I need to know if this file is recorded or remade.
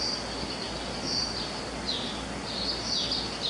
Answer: recorded